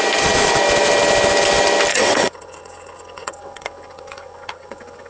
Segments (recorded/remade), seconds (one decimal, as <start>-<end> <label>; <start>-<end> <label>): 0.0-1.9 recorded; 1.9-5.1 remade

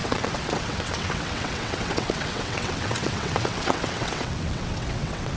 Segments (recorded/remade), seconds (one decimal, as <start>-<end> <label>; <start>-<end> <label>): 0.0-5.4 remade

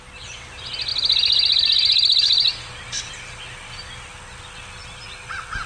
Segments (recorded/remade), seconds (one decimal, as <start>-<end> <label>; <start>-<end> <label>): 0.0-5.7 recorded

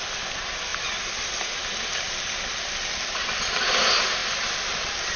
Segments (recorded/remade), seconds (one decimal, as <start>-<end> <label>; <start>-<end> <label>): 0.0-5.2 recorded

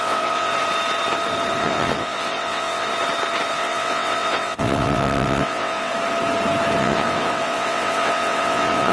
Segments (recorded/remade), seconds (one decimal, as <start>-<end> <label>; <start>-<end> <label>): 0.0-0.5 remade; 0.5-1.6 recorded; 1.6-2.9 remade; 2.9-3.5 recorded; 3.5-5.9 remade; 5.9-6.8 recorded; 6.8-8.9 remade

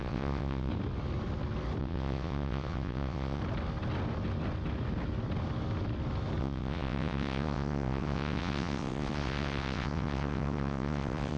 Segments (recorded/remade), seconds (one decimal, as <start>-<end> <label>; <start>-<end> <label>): 0.0-0.7 remade; 0.7-1.8 recorded; 1.8-3.4 remade; 3.4-6.4 recorded; 6.4-11.4 remade